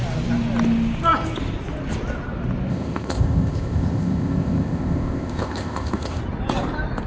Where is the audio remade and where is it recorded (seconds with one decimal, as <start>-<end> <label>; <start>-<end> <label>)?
0.0-2.7 recorded; 2.7-6.2 remade; 6.2-7.1 recorded